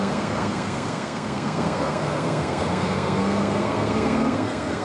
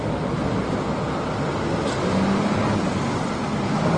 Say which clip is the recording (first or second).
second